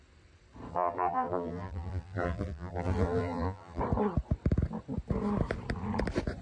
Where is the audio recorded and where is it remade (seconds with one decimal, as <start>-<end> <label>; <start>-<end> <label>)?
0.0-0.7 recorded; 0.7-3.8 remade; 3.8-6.4 recorded